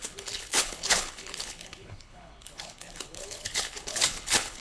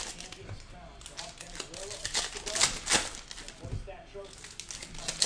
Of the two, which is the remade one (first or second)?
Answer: first